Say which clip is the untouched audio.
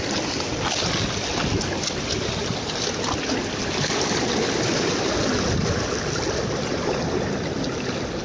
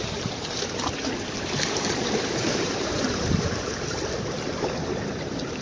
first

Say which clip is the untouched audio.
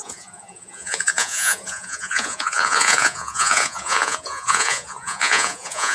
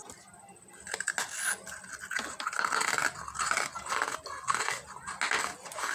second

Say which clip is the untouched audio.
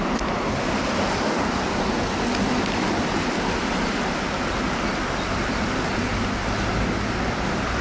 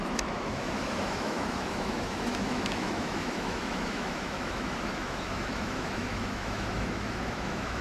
first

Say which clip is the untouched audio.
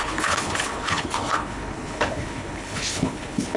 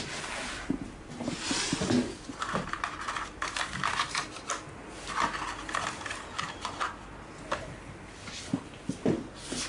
second